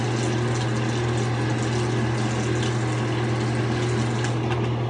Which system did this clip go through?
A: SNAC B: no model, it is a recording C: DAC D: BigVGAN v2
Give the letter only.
B